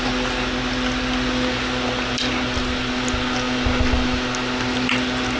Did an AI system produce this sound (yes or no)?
no